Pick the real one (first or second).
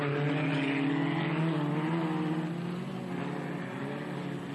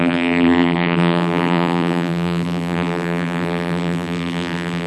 first